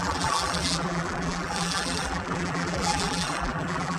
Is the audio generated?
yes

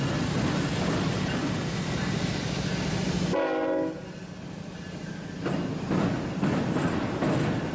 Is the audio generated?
no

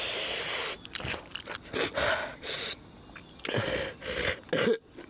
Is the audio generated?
no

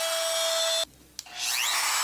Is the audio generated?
no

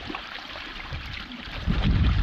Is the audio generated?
yes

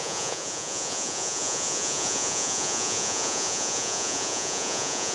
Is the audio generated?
yes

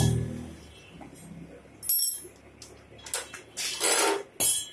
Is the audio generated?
no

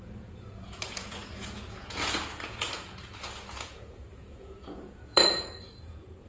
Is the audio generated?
yes